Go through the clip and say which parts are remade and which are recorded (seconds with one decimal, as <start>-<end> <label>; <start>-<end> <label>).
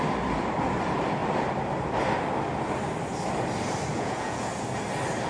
0.0-3.9 recorded; 3.9-4.5 remade; 4.5-5.3 recorded